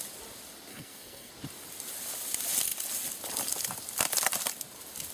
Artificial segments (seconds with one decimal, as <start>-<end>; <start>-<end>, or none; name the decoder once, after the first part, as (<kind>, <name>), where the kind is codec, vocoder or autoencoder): 0.7-1.3 (codec, SNAC)